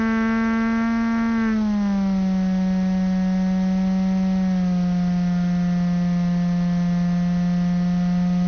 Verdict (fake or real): real